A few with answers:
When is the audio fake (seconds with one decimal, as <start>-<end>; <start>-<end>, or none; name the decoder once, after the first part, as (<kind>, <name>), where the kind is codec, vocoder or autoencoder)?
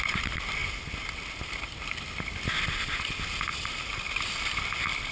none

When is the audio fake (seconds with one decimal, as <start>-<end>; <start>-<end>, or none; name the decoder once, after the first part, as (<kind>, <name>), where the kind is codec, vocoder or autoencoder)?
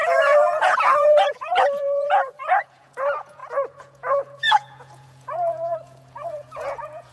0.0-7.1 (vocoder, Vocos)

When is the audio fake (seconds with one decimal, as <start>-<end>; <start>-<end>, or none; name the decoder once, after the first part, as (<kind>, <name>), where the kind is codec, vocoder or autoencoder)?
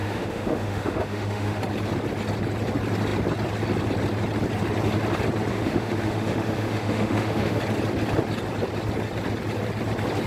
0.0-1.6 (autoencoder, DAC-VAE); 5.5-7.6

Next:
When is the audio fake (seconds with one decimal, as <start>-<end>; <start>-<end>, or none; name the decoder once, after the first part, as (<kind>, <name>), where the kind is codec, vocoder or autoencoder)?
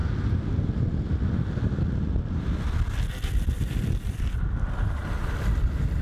3.6-6.0 (vocoder, BigVGAN v2)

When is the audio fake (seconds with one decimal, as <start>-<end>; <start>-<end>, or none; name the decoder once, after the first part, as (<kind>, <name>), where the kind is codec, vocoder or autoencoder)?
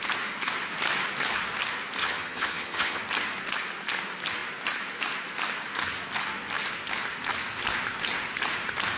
2.0-3.0 (vocoder, HiFi-GAN)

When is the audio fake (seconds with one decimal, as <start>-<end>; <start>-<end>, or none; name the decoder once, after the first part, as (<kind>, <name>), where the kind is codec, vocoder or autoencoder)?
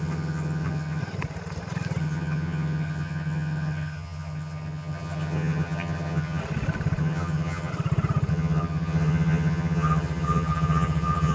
0.0-1.0 (vocoder, HiFi-GAN); 2.0-6.4; 7.0-7.7; 8.3-11.3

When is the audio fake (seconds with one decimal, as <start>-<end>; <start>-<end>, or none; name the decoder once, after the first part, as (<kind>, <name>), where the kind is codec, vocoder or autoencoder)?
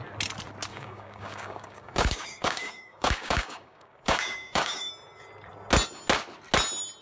0.7-4.9 (codec, DAC)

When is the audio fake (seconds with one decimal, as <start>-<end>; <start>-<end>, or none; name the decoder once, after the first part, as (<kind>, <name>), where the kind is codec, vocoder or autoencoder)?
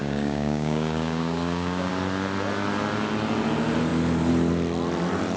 0.0-1.9 (codec, DAC)